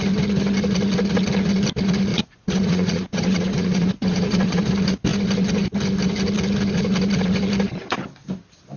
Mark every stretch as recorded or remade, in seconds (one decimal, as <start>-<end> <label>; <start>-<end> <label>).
0.0-2.1 recorded; 2.1-4.6 remade; 4.6-8.8 recorded